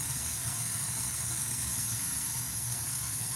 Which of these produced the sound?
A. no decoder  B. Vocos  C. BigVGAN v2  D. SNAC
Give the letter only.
D